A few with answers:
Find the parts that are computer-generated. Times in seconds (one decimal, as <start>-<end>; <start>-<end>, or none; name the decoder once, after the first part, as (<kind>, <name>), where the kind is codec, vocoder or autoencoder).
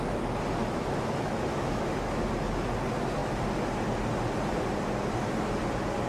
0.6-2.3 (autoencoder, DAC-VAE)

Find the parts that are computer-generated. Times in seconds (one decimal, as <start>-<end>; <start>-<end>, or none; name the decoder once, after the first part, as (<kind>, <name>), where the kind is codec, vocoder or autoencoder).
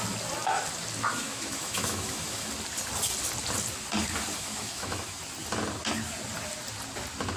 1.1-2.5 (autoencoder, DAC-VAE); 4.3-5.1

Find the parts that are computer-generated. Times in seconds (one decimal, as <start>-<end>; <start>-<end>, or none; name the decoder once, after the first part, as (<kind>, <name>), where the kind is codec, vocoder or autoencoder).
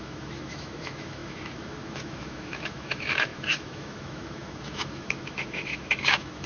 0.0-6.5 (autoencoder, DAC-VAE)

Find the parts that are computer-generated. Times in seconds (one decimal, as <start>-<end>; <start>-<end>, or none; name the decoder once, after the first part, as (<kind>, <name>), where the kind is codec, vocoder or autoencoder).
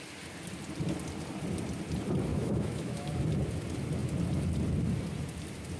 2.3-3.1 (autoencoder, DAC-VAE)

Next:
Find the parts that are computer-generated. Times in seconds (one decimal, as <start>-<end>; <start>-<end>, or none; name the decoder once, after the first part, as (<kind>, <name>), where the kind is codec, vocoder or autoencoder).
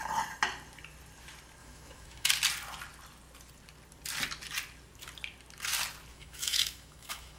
1.6-2.3 (autoencoder, DAC-VAE); 6.1-7.4